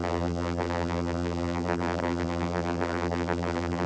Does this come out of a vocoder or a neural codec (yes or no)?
yes